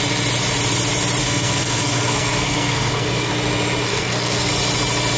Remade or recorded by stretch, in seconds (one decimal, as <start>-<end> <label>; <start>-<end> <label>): 0.0-1.2 recorded; 1.2-3.3 remade; 3.3-3.9 recorded; 3.9-4.5 remade; 4.5-5.2 recorded